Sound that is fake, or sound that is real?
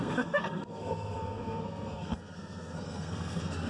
fake